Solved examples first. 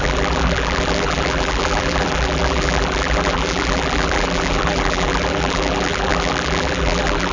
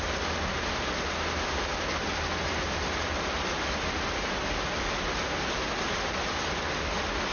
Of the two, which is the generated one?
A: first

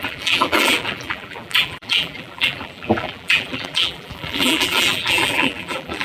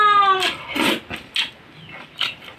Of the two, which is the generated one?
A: first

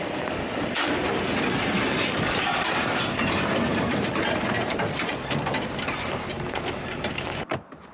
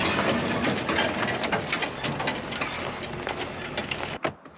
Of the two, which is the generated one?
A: first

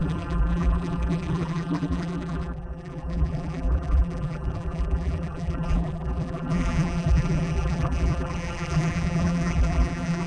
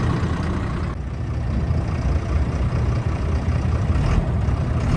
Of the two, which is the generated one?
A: first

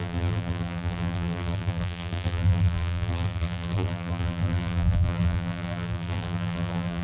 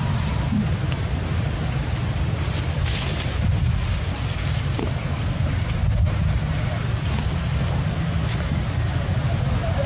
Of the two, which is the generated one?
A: first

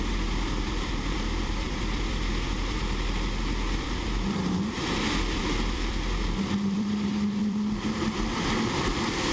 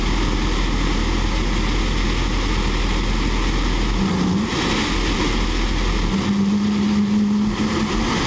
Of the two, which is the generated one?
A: first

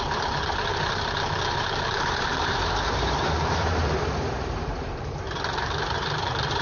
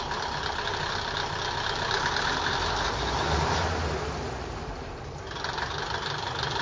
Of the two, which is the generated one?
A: first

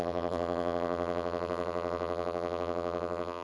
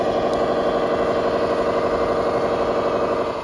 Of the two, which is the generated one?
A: first